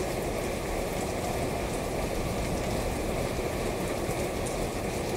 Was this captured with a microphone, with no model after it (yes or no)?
yes